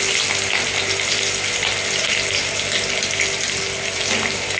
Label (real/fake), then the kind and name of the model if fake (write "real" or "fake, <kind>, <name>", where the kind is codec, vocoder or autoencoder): real